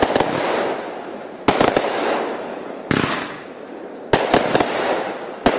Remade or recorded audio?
recorded